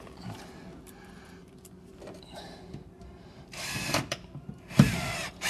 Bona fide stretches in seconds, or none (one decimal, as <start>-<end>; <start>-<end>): 0.0-1.9